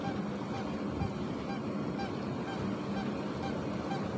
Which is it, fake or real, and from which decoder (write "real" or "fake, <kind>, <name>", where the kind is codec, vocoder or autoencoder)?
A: real